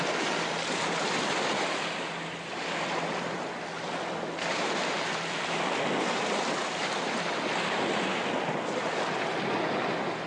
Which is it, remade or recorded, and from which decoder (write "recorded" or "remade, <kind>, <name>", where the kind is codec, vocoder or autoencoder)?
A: recorded